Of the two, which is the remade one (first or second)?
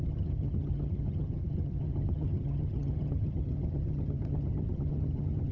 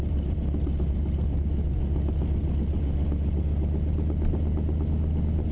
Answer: first